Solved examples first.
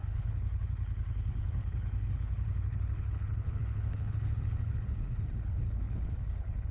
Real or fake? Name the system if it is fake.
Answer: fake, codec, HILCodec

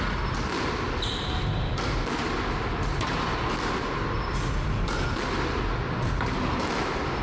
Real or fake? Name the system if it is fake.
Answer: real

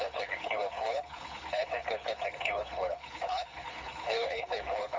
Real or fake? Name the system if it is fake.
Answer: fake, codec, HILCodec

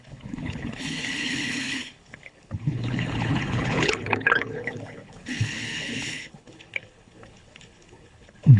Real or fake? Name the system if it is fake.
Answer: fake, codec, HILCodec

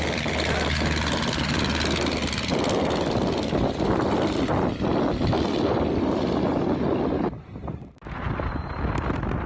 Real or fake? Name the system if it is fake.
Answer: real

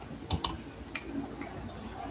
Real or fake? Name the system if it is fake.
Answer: real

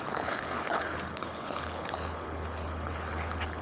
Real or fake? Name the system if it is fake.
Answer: fake, codec, HILCodec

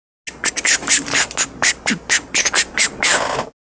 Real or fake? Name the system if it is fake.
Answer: real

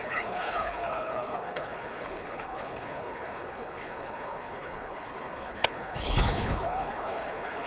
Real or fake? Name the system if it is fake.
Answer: fake, codec, HILCodec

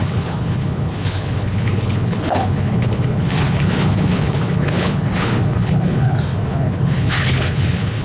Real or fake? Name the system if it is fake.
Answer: fake, codec, HILCodec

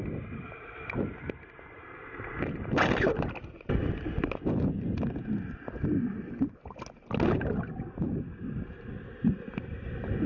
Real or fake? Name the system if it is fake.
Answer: real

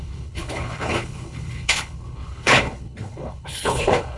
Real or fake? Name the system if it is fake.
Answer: fake, codec, HILCodec